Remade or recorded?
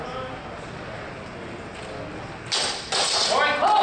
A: recorded